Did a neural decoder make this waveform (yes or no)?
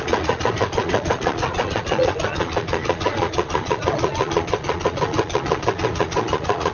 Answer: yes